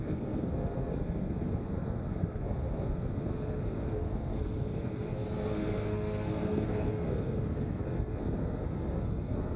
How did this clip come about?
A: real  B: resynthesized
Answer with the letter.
B